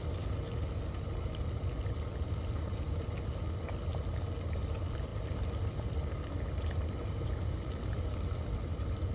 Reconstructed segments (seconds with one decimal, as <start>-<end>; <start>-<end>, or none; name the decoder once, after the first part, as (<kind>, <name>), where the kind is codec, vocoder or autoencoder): none